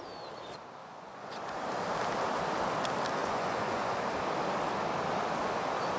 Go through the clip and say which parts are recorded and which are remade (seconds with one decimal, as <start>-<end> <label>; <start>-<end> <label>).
0.0-0.8 recorded; 0.8-1.6 remade; 1.6-3.2 recorded; 3.2-3.9 remade; 3.9-6.0 recorded